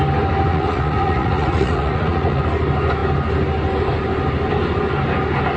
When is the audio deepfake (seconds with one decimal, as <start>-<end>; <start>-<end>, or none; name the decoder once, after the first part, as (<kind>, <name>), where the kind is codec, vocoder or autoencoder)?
0.5-2.4 (vocoder, Vocos)